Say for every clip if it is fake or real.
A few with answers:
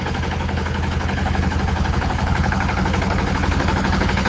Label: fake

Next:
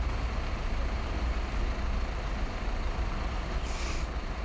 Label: real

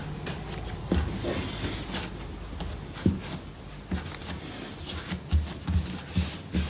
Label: real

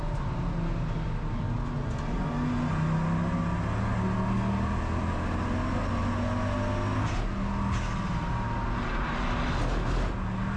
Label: real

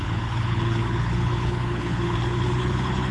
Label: fake